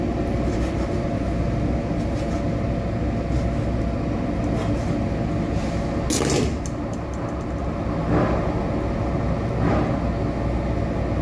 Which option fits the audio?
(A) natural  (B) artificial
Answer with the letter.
A